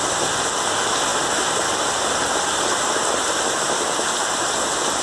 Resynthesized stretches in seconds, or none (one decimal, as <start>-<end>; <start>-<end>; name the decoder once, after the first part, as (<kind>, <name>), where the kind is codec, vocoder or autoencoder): none